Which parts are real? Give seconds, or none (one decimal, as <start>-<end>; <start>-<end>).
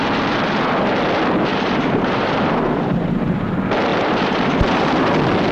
0.0-1.5; 3.1-3.9; 5.0-5.5